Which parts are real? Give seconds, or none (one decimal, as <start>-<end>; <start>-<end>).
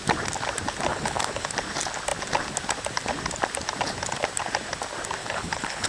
0.0-0.9; 1.5-5.2